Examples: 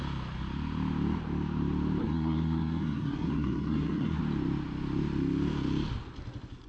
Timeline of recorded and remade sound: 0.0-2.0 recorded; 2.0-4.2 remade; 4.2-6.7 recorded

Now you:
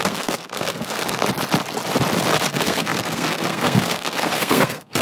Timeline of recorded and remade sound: 0.0-1.2 remade; 1.2-2.5 recorded; 2.5-5.0 remade